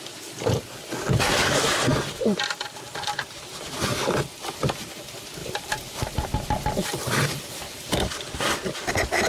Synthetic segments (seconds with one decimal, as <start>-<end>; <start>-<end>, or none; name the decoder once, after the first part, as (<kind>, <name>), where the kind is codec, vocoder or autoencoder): 5.4-8.9 (vocoder, BigVGAN v2)